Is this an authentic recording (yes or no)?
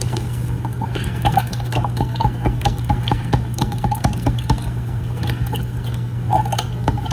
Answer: no